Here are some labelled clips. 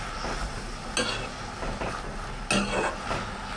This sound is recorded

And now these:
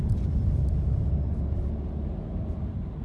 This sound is recorded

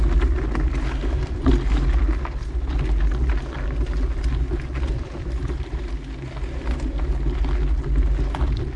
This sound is recorded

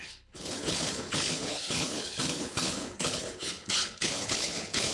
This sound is remade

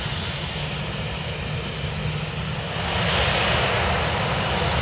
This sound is recorded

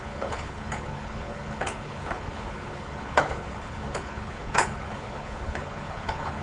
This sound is remade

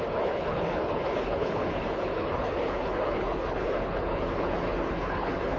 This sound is remade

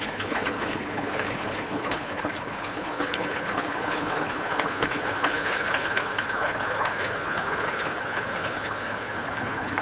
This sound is remade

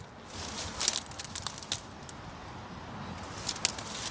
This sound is recorded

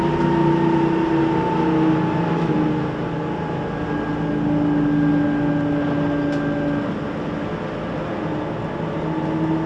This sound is recorded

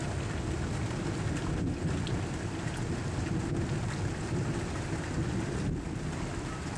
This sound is recorded